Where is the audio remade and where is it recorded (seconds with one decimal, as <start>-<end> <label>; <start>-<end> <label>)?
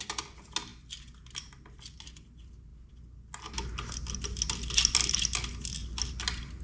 0.0-6.6 recorded